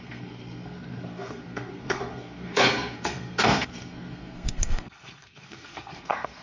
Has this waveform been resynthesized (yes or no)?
yes